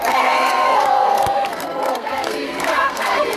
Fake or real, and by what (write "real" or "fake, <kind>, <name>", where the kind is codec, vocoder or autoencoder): fake, codec, SNAC